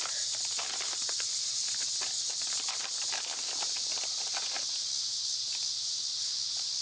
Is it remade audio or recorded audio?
recorded